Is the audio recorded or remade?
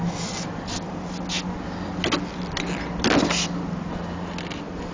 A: recorded